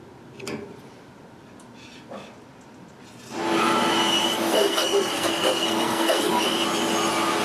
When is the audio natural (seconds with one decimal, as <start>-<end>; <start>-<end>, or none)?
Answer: 0.0-4.5; 6.3-7.4